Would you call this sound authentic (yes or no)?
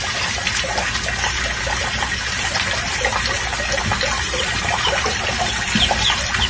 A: yes